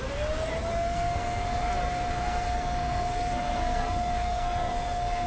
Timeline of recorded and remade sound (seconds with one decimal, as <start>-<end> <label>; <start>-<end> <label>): 0.0-0.7 recorded; 0.7-1.7 remade; 1.7-2.1 recorded; 2.1-5.3 remade